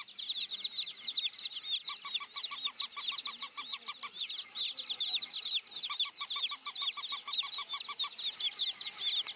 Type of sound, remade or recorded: recorded